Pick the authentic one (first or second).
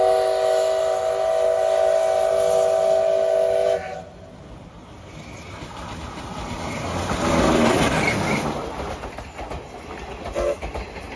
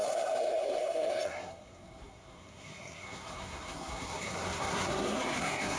first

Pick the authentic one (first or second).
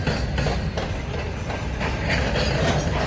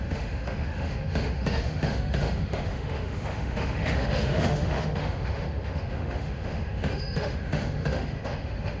first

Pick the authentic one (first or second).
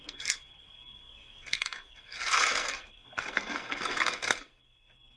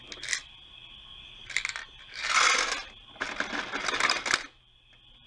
second